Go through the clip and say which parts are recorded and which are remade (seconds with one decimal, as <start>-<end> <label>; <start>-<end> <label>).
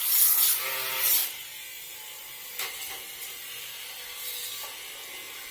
0.0-5.5 recorded